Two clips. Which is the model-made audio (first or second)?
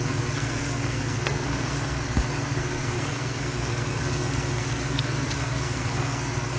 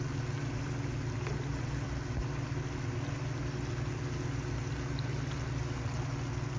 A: first